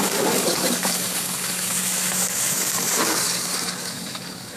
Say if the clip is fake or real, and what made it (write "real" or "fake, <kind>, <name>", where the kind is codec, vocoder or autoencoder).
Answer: fake, codec, DAC